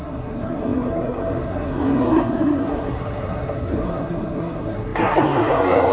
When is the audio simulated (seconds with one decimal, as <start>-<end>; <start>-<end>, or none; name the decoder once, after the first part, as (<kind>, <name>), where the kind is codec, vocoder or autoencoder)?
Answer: 0.0-5.9 (codec, SNAC)